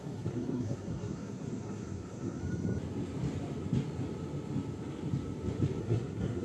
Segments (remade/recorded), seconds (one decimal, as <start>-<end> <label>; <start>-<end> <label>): 0.0-2.4 remade; 2.4-5.8 recorded; 5.8-6.4 remade

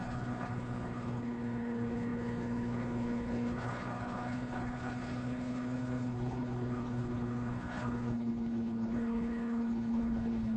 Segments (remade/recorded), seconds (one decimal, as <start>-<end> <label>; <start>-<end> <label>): 0.0-10.6 remade

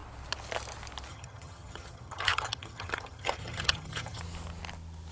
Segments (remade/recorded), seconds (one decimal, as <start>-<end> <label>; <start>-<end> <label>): 0.0-1.1 recorded; 1.1-4.2 remade; 4.2-5.1 recorded

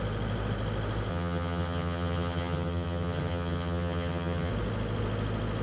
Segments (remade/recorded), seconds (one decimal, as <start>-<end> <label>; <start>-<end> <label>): 0.0-1.1 recorded; 1.1-4.5 remade; 4.5-5.6 recorded

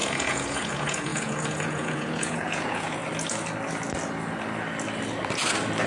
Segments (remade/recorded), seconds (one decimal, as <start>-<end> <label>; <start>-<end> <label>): 0.0-3.0 remade; 3.0-5.9 recorded

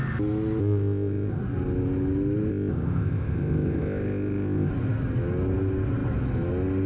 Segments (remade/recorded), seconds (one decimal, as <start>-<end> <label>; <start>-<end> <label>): 0.0-0.6 recorded; 0.6-1.4 remade; 1.4-2.5 recorded; 2.5-4.7 remade; 4.7-6.9 recorded

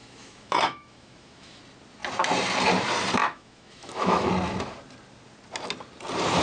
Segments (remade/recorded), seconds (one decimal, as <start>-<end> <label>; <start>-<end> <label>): 0.0-1.6 remade; 1.6-3.2 recorded; 3.2-4.3 remade; 4.3-6.4 recorded

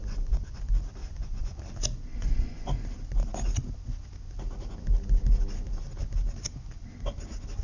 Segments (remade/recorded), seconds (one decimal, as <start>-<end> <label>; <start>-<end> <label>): 0.0-0.6 remade; 0.6-1.0 recorded; 1.0-1.6 remade; 1.6-2.1 recorded; 2.1-2.7 remade; 2.7-7.6 recorded